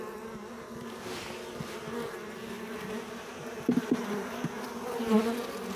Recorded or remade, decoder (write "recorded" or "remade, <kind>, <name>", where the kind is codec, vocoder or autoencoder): recorded